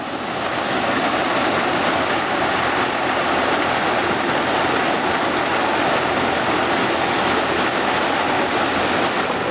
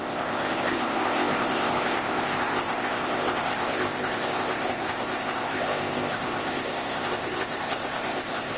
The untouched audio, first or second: first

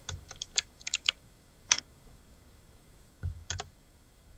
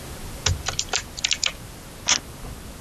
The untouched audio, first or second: second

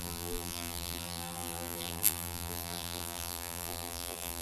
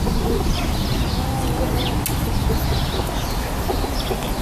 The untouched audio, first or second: second